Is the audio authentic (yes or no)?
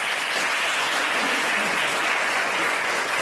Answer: no